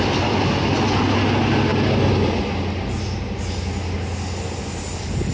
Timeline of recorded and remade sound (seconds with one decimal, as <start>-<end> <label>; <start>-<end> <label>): 0.0-5.3 recorded